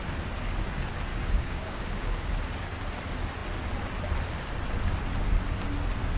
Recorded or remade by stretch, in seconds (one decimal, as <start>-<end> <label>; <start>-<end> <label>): 0.0-1.1 recorded; 1.1-2.3 remade; 2.3-6.2 recorded